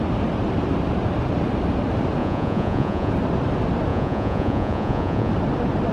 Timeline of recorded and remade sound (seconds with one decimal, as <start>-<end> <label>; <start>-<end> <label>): 0.0-2.2 recorded; 2.2-3.1 remade; 3.1-3.9 recorded; 3.9-5.3 remade; 5.3-5.9 recorded